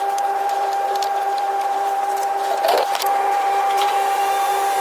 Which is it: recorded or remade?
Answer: remade